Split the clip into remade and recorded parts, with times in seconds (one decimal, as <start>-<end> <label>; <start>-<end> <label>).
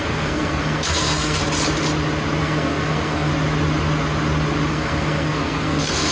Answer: 0.0-1.4 remade; 1.4-2.4 recorded; 2.4-3.3 remade; 3.3-4.7 recorded; 4.7-6.1 remade